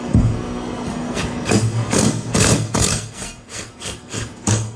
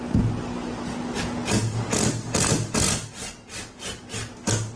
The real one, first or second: second